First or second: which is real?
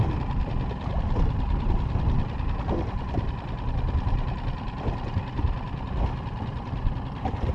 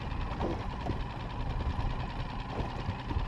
second